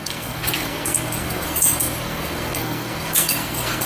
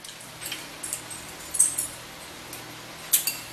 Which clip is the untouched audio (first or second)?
second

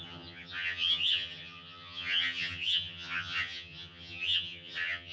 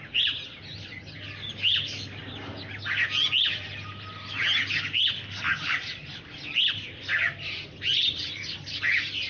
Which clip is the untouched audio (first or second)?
second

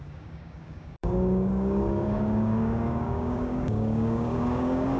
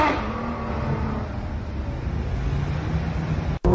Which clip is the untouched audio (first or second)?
second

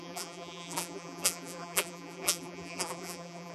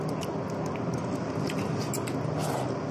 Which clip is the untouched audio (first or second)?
second